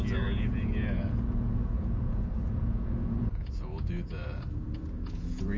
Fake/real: fake